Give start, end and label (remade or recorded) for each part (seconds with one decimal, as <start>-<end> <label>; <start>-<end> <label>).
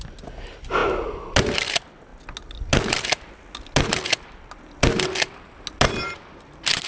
0.0-6.9 recorded